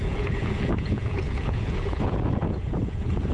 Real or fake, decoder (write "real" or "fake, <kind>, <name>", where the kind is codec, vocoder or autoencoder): fake, vocoder, Vocos